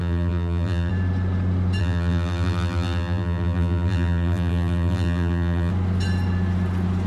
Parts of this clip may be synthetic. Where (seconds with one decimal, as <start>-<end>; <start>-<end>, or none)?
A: 0.0-0.9; 1.8-5.7